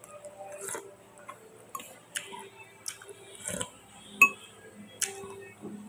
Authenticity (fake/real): real